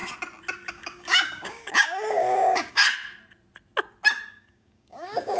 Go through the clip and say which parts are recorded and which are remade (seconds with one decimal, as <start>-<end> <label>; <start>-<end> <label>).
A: 0.0-0.7 recorded; 0.7-2.8 remade; 2.8-4.3 recorded; 4.3-5.4 remade